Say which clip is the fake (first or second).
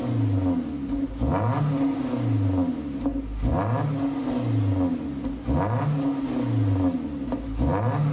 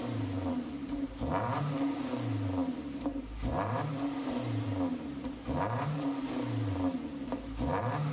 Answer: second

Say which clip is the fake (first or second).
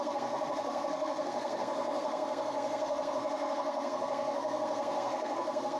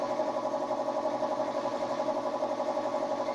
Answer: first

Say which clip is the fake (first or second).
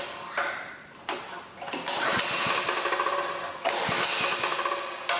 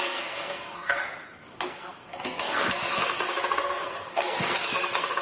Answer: second